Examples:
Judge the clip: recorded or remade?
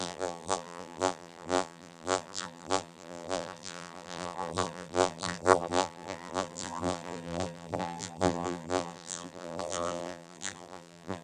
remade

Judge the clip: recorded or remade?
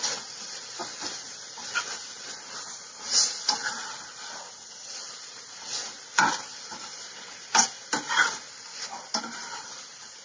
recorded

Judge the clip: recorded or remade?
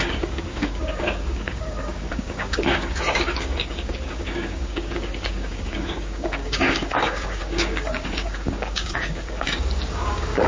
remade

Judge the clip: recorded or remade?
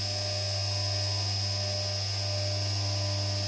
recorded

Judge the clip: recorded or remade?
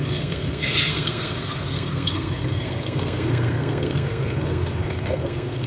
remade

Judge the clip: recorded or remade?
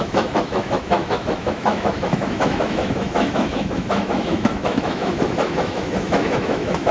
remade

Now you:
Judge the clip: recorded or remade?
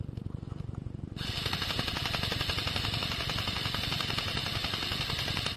recorded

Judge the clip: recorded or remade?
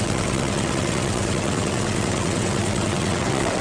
remade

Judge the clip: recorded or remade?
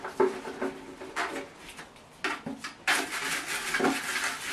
recorded